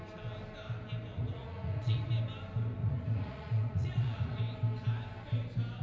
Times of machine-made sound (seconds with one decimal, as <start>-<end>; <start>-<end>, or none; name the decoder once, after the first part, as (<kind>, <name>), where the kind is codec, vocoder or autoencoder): 1.1-2.1 (vocoder, Vocos); 2.8-4.4